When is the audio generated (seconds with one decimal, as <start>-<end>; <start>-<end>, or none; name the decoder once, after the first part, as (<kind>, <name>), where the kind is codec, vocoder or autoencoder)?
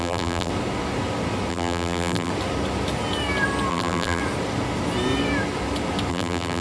0.0-0.5 (vocoder, BigVGAN v2); 1.5-2.3; 3.7-4.2; 6.1-6.6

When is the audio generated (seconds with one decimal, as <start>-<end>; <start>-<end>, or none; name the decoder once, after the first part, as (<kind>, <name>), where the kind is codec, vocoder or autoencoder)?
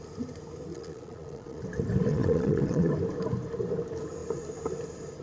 0.7-1.6 (vocoder, Vocos); 2.1-2.9